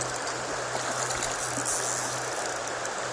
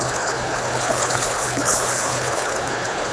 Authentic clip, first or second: first